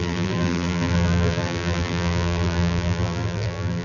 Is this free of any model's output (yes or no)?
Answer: no